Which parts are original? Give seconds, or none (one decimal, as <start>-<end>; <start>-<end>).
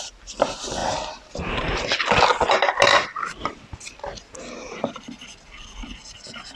0.0-6.6